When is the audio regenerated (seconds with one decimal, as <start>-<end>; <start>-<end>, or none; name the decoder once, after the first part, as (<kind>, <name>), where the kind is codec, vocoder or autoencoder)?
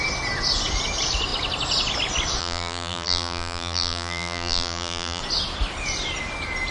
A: 2.4-5.2 (vocoder, BigVGAN v2)